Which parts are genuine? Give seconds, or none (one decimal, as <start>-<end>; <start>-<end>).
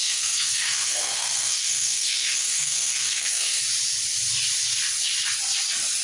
3.6-6.0